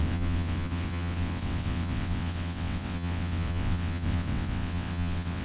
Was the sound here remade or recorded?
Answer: remade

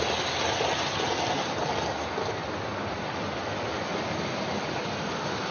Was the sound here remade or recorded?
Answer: recorded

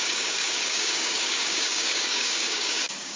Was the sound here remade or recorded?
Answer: remade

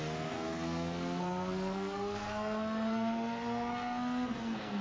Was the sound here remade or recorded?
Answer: remade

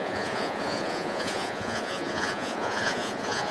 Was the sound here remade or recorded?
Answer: remade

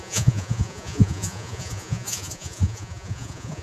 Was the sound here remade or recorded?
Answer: remade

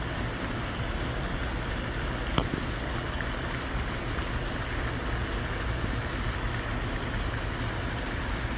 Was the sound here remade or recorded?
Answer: recorded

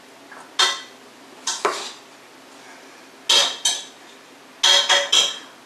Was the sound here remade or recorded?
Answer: recorded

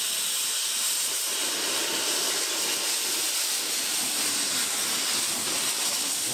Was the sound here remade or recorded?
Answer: recorded